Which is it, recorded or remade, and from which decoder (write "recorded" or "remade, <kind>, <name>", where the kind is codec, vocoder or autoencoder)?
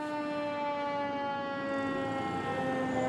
recorded